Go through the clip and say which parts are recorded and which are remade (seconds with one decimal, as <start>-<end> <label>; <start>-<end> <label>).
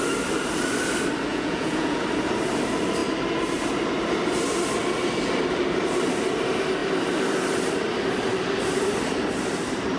0.0-1.3 recorded; 1.3-2.0 remade; 2.0-10.0 recorded